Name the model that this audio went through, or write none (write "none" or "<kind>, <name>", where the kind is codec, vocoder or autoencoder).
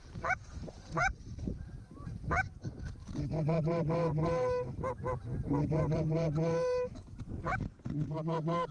vocoder, BigVGAN v2